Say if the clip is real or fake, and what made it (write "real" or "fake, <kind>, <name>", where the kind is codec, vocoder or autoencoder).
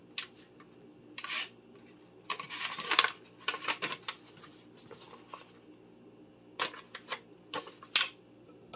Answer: real